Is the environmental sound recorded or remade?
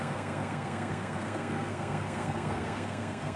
remade